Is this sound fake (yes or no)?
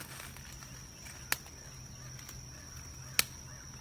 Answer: no